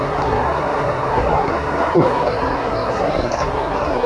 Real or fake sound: fake